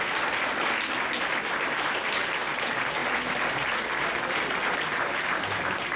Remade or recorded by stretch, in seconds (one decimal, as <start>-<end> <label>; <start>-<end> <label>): 0.0-6.0 recorded